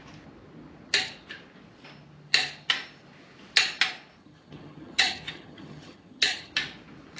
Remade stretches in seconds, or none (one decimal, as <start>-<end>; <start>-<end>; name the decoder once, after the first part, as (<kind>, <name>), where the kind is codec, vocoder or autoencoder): 4.2-6.5 (vocoder, HiFi-GAN)